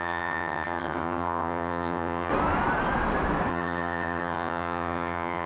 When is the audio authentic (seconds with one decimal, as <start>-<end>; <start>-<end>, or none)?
2.3-3.5